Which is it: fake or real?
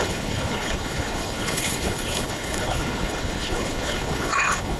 fake